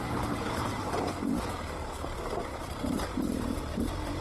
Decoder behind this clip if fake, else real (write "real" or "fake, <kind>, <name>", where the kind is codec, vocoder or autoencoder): fake, vocoder, BigVGAN v2